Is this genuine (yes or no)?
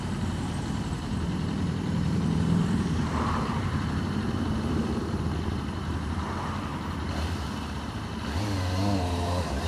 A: no